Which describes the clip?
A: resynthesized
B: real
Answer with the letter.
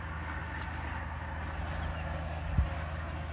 B